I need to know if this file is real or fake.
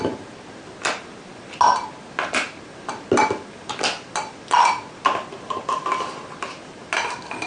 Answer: real